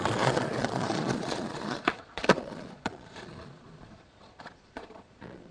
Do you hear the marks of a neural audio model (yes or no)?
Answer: yes